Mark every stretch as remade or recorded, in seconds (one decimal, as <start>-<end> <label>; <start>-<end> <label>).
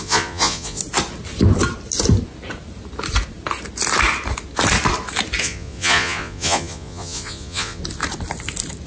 0.0-0.8 remade; 0.8-5.4 recorded; 5.4-7.8 remade; 7.8-8.9 recorded